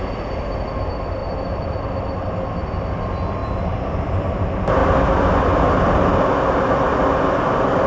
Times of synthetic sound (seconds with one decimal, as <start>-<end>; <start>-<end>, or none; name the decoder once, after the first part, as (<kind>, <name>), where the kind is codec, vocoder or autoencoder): 1.2-2.5 (vocoder, BigVGAN v2); 3.4-4.1